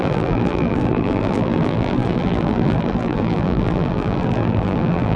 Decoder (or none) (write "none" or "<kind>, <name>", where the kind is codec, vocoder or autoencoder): vocoder, BigVGAN v2